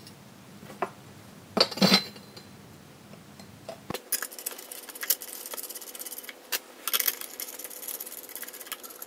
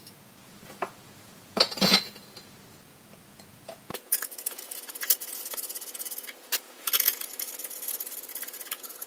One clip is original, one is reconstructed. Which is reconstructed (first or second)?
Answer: second